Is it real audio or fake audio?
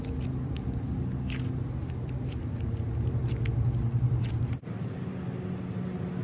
real